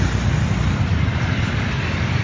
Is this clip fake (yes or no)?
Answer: no